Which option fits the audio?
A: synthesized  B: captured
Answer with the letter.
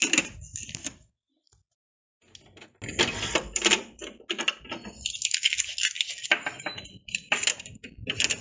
B